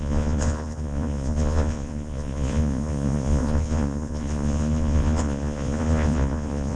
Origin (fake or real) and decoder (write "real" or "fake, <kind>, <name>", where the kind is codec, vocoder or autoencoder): fake, vocoder, Vocos